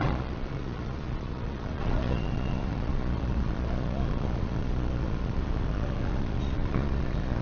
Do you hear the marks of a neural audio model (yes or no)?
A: yes